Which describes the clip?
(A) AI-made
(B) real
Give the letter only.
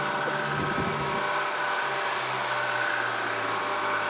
B